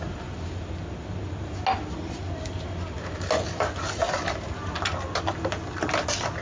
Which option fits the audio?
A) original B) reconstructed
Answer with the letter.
A